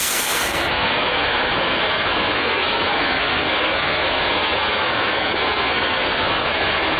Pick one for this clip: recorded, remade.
remade